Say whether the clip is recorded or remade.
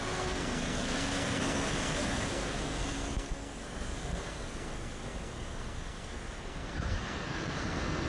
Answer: remade